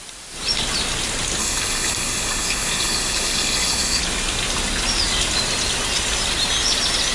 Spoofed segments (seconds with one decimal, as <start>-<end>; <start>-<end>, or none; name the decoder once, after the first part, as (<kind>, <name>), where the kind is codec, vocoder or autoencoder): 1.4-4.0 (codec, DAC)